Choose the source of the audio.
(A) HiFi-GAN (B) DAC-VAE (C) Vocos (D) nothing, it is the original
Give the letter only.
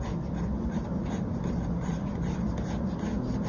D